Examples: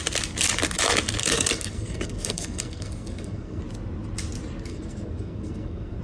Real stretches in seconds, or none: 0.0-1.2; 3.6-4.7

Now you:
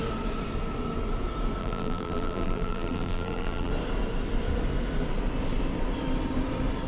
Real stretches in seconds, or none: 0.0-1.6; 3.7-6.9

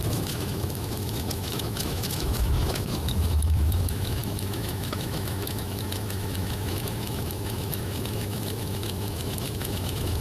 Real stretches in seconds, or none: none

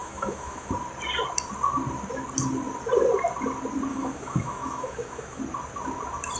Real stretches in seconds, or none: 0.7-3.9; 5.4-6.4